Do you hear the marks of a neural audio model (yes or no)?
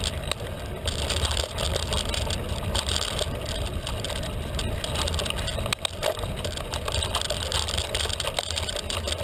no